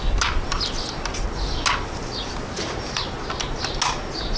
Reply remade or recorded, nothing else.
recorded